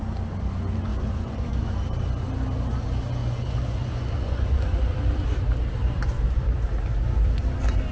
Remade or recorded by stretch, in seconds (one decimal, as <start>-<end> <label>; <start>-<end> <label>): 0.0-0.9 recorded; 0.9-1.7 remade; 1.7-3.2 recorded; 3.2-4.6 remade; 4.6-7.9 recorded